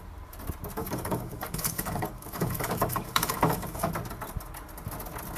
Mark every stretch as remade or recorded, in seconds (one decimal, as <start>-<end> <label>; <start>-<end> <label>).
0.0-0.8 recorded; 0.8-3.9 remade; 3.9-5.4 recorded